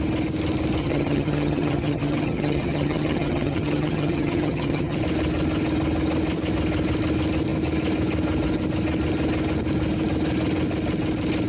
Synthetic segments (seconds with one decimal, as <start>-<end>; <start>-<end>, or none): 0.8-5.0